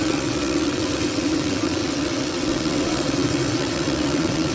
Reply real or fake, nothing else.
fake